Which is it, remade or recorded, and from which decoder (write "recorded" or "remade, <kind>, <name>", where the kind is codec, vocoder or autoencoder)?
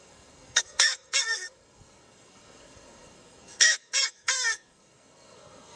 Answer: remade, codec, SNAC